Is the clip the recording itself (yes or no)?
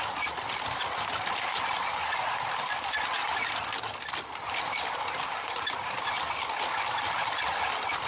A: yes